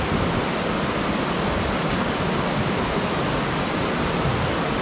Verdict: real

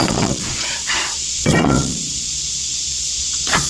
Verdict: fake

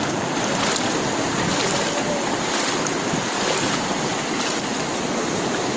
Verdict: real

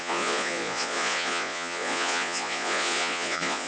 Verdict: fake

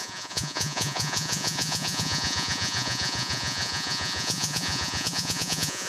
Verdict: fake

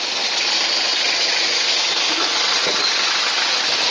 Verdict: real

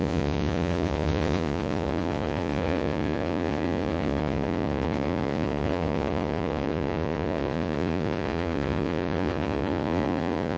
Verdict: fake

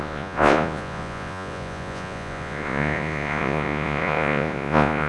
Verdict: fake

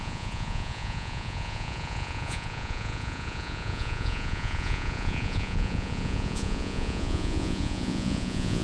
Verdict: fake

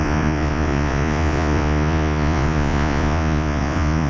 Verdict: fake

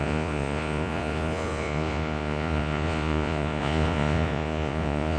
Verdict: fake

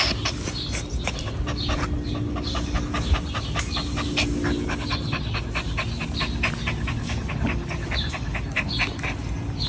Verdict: real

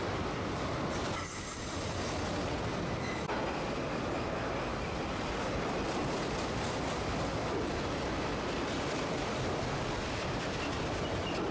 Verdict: real